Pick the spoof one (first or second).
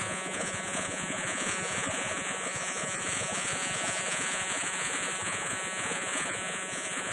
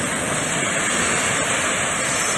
first